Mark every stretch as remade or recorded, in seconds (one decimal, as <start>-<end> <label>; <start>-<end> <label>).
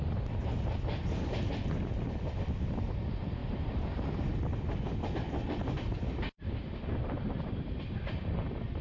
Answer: 0.0-3.4 recorded; 3.4-6.9 remade; 6.9-8.8 recorded